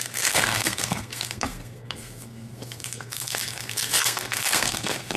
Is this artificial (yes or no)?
yes